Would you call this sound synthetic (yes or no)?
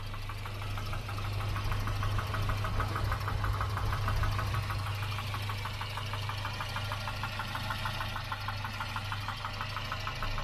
no